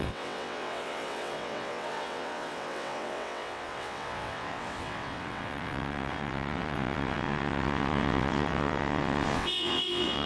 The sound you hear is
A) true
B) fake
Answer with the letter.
B